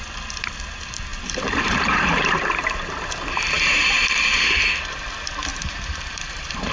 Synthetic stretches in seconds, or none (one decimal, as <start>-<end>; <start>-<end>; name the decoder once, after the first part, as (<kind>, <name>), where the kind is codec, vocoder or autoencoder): 1.1-4.3 (vocoder, BigVGAN v2); 5.5-6.7